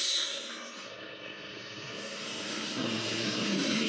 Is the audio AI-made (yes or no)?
yes